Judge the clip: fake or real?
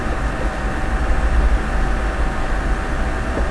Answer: real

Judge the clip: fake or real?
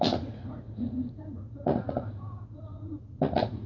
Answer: fake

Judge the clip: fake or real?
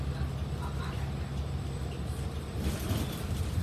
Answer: real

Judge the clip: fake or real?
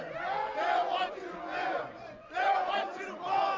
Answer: fake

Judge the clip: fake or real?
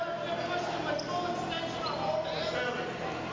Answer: real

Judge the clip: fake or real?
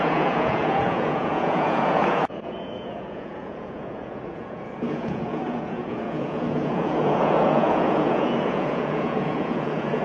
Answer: fake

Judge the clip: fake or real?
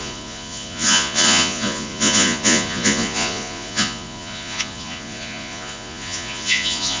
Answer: fake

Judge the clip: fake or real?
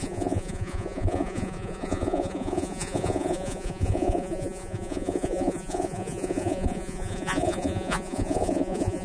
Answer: fake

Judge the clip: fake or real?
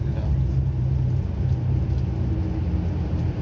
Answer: real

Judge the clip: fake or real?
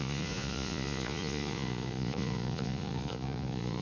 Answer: fake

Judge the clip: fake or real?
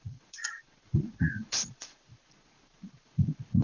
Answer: fake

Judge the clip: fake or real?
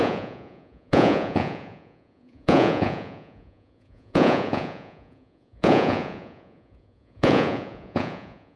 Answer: fake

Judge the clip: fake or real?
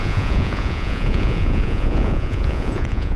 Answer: fake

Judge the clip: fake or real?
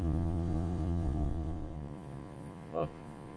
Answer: fake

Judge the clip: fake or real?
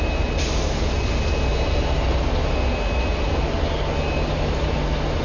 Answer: real